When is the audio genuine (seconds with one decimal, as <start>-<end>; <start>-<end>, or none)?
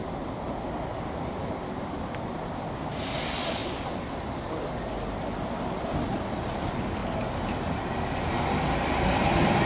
0.0-0.7; 3.6-6.3; 7.0-7.9